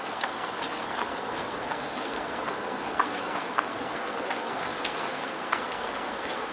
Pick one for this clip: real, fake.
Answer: fake